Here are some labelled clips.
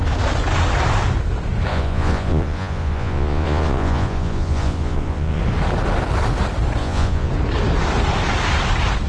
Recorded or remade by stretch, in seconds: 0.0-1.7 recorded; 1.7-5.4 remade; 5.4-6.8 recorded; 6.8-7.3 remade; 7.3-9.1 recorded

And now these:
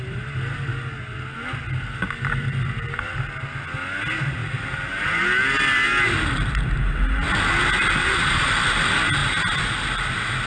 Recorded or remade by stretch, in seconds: 0.0-8.0 recorded; 8.0-8.5 remade; 8.5-10.5 recorded